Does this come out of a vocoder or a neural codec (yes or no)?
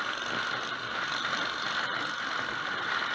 no